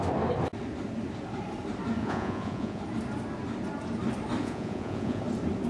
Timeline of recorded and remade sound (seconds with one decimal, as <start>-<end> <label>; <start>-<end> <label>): 0.0-2.0 recorded; 2.0-2.8 remade; 2.8-4.4 recorded; 4.4-5.2 remade; 5.2-5.7 recorded

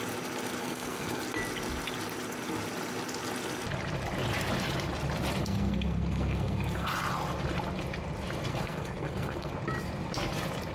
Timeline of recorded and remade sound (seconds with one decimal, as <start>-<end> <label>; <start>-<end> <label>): 0.0-0.6 recorded; 0.6-1.2 remade; 1.2-5.4 recorded; 5.4-6.9 remade; 6.9-8.5 recorded; 8.5-9.5 remade; 9.5-10.7 recorded

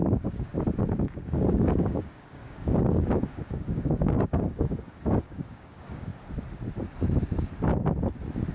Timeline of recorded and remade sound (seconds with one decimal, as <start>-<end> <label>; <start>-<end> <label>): 0.0-0.5 remade; 0.5-1.1 recorded; 1.1-6.1 remade; 6.1-8.5 recorded

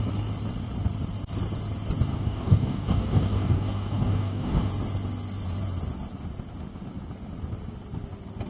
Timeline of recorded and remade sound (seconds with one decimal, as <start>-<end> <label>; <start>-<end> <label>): 0.0-2.1 recorded; 2.1-4.7 remade; 4.7-8.5 recorded

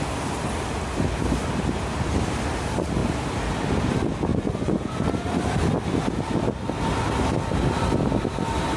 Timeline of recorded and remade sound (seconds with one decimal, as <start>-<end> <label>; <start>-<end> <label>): 0.0-4.3 recorded; 4.3-5.1 remade; 5.1-8.8 recorded

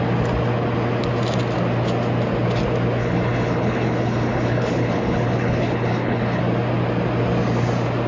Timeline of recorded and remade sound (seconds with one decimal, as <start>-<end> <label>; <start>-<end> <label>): 0.0-3.0 recorded; 3.0-6.4 remade; 6.4-8.1 recorded